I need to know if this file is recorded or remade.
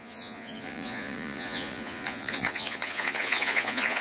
remade